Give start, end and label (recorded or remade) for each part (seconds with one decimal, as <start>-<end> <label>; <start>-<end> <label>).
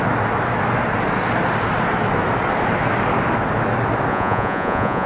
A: 0.0-4.1 recorded; 4.1-5.1 remade